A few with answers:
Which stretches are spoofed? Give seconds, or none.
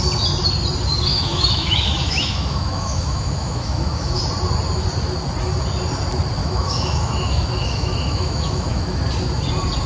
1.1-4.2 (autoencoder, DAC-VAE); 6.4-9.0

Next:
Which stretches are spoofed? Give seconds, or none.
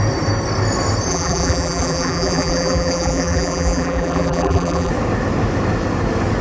1.1-4.9 (vocoder, BigVGAN v2)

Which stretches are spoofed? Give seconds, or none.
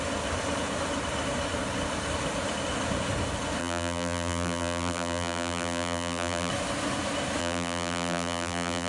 3.6-6.5 (vocoder, BigVGAN v2); 7.4-8.9